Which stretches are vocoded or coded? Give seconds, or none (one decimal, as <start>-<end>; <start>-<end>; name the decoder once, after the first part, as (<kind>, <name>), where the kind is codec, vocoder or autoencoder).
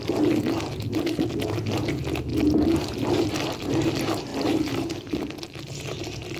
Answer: 2.3-3.3 (vocoder, BigVGAN v2); 4.3-5.0